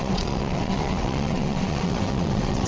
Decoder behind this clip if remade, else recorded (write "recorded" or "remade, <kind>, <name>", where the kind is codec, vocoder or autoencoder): remade, vocoder, WaveNeXt